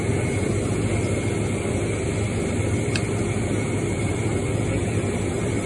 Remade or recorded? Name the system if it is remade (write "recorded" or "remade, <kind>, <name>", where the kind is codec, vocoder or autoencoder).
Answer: remade, vocoder, BigVGAN v2